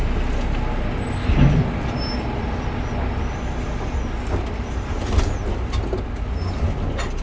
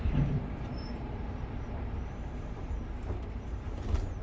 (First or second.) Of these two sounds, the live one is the first